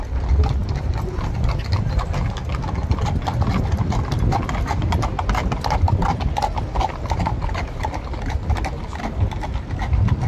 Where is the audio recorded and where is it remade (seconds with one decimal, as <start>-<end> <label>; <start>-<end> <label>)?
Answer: 0.0-0.6 recorded; 0.6-3.5 remade; 3.5-10.3 recorded